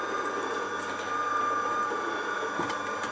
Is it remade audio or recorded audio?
recorded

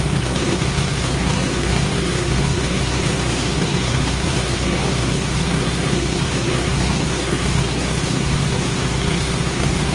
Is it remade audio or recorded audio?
remade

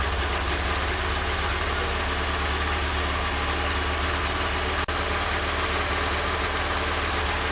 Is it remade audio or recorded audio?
recorded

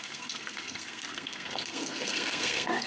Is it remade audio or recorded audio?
remade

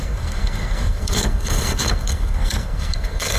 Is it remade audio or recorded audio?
remade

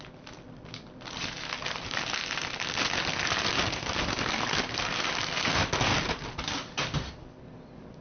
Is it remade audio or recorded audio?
recorded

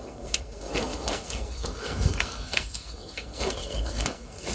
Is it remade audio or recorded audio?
remade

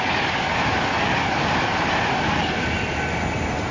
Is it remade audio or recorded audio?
recorded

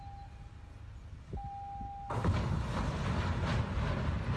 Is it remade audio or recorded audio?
recorded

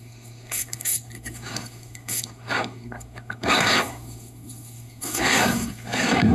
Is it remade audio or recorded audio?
remade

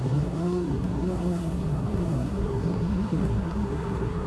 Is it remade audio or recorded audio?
remade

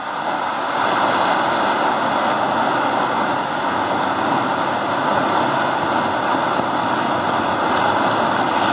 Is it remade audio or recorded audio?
recorded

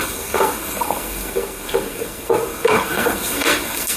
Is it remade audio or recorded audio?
remade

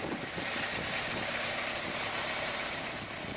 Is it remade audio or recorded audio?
recorded